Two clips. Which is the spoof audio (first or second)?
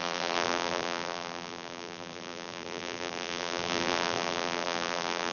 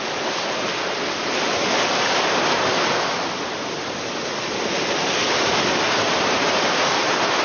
first